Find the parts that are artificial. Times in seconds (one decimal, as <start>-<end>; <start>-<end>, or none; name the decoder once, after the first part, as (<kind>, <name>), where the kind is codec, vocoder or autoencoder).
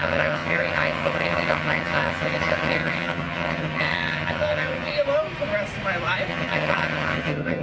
0.0-4.9 (vocoder, HiFi-GAN); 6.3-7.6